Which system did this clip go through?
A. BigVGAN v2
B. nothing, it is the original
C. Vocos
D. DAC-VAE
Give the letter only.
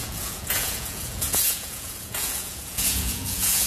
C